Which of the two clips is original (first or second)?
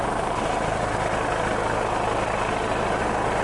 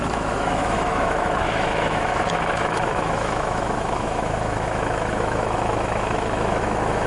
first